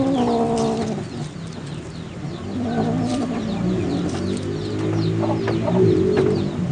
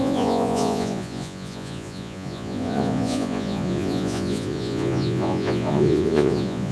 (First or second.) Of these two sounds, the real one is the first